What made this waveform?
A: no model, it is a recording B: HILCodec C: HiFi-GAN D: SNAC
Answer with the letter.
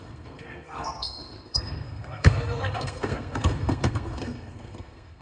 D